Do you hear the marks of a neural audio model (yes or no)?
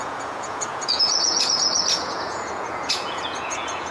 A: yes